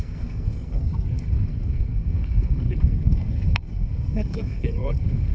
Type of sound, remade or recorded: remade